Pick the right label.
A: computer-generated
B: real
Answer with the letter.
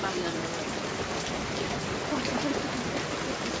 B